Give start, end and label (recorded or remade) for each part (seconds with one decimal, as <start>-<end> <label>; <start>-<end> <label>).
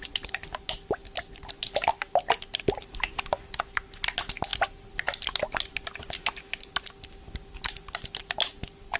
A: 0.0-9.0 recorded